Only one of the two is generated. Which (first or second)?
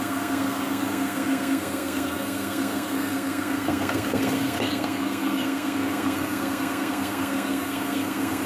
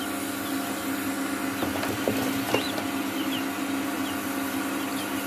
first